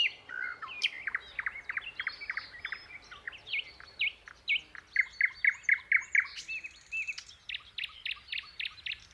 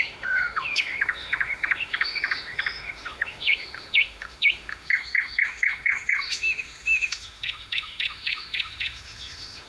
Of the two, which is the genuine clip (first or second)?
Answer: first